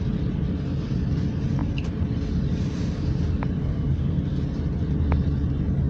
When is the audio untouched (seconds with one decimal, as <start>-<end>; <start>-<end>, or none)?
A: 0.0-3.6; 4.2-5.9